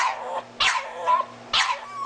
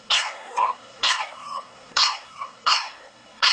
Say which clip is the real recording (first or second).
first